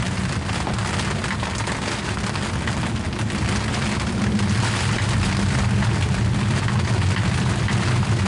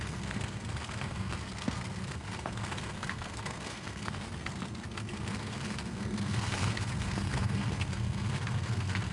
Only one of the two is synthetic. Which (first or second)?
second